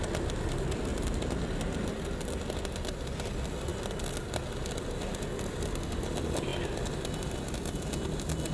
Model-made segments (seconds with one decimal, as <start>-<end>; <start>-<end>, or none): none